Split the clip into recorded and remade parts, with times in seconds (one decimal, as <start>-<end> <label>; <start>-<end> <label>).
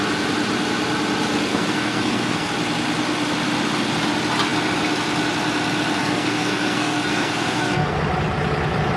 0.0-1.5 recorded; 1.5-2.5 remade; 2.5-6.0 recorded; 6.0-8.0 remade; 8.0-9.0 recorded